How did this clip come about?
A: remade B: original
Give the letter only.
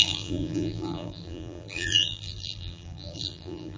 A